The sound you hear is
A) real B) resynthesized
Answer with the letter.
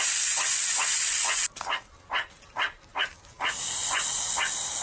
A